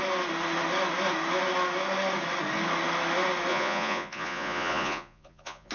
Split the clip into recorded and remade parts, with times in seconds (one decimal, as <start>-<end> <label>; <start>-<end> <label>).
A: 0.0-3.5 recorded; 3.5-5.7 remade